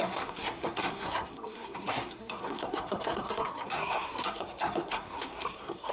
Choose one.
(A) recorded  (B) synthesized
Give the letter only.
B